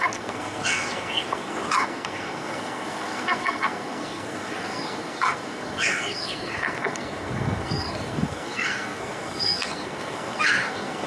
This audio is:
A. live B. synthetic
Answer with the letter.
B